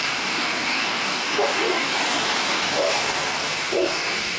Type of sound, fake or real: fake